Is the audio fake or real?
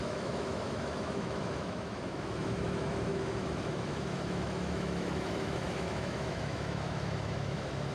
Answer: fake